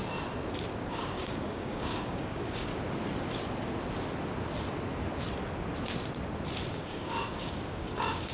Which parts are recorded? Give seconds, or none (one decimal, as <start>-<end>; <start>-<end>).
0.0-0.9; 2.7-6.7